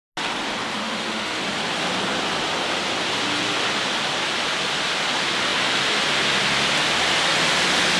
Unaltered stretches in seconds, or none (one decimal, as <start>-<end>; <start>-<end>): 0.0-0.8; 1.4-8.0